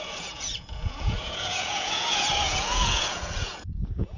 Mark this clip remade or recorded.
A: remade